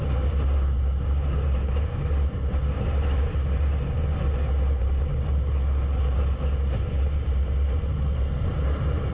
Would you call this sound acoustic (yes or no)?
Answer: yes